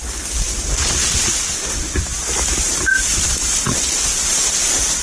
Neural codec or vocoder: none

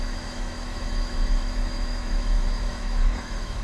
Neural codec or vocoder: autoencoder, DAC-VAE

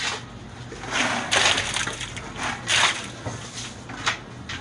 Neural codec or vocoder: none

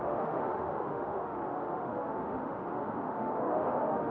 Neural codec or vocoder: autoencoder, DAC-VAE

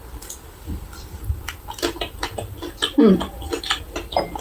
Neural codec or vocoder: none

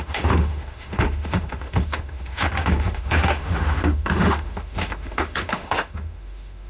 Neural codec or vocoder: autoencoder, DAC-VAE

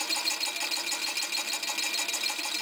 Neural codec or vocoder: none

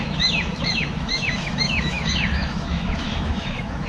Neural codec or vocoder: autoencoder, DAC-VAE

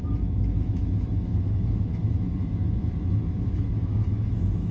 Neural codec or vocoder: autoencoder, DAC-VAE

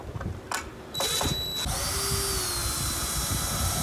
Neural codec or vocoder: none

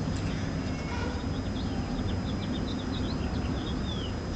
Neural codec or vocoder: none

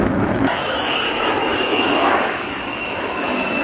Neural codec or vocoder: autoencoder, DAC-VAE